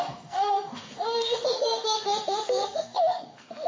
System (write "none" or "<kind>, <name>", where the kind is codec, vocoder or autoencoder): codec, SNAC